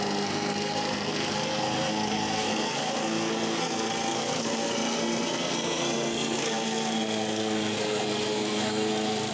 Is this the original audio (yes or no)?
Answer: no